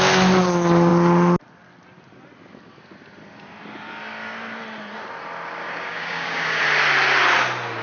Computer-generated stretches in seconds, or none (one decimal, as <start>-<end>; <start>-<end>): 5.6-6.6